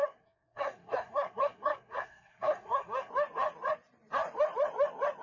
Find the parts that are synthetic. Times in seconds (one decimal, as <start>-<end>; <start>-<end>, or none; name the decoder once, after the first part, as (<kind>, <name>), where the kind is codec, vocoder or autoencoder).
0.0-3.1 (codec, SNAC)